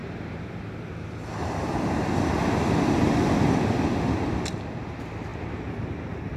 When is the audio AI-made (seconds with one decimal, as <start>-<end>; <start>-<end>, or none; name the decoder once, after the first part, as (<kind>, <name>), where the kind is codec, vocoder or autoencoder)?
0.0-3.4 (vocoder, BigVGAN v2); 5.3-6.4